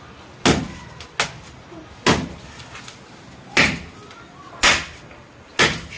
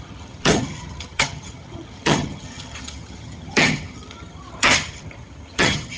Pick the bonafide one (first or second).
first